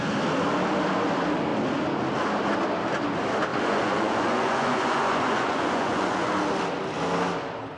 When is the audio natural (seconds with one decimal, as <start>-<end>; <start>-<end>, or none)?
0.0-3.5; 6.3-7.8